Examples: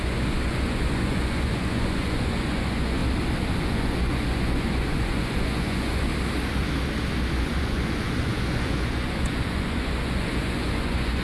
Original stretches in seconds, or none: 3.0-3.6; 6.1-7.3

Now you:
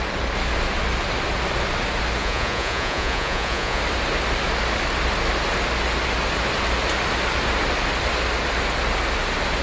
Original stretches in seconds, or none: 0.0-2.2; 3.8-9.6

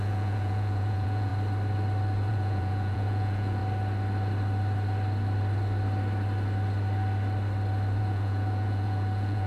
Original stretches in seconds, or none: 1.3-2.3; 3.6-8.0

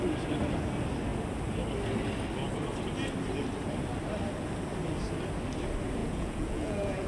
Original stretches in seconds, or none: 0.0-6.0

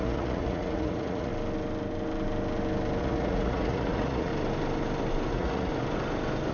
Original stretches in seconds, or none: 1.3-3.0; 4.3-5.3; 5.7-6.5

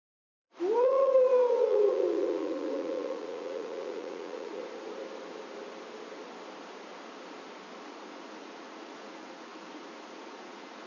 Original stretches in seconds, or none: 4.6-7.8

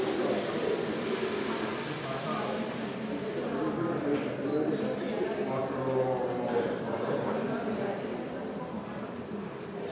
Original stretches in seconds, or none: 0.0-9.9

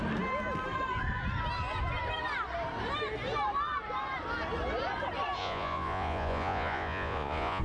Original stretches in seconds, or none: 0.0-5.4